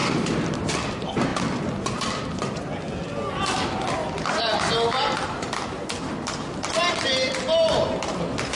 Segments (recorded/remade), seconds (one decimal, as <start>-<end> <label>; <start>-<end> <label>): 0.0-0.7 remade; 0.7-8.5 recorded